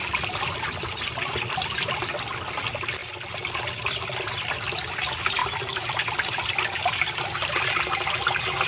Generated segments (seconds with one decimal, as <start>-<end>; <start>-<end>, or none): 0.0-1.9; 3.0-4.3; 5.4-8.1